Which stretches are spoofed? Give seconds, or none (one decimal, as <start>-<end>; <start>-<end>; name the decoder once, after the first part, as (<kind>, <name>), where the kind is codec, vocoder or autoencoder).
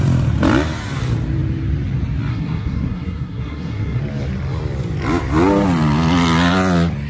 2.3-4.0 (codec, SNAC)